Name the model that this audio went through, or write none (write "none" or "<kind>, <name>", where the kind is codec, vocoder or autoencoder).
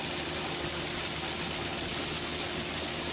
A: none